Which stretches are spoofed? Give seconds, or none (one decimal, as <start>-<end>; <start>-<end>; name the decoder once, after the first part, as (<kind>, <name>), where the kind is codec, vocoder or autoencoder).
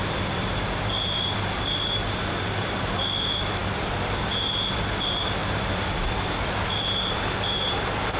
0.0-8.2 (vocoder, BigVGAN v2)